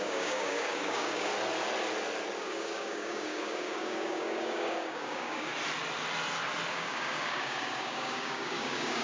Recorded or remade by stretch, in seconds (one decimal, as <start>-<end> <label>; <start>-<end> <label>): 0.0-1.3 remade; 1.3-2.4 recorded; 2.4-5.5 remade; 5.5-6.7 recorded; 6.7-9.0 remade